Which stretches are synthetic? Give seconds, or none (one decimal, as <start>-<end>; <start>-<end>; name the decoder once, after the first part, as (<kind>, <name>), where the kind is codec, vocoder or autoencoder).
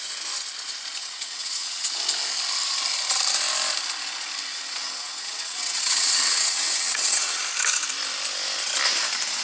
1.0-2.0 (vocoder, WaveNeXt); 4.5-7.4